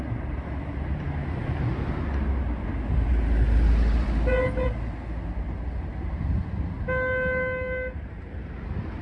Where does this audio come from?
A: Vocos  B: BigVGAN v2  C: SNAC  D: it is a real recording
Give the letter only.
D